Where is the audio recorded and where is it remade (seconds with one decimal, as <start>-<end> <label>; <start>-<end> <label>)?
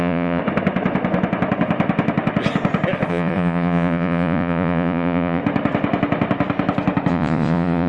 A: 0.0-0.4 remade; 0.4-3.1 recorded; 3.1-5.4 remade; 5.4-7.1 recorded; 7.1-7.9 remade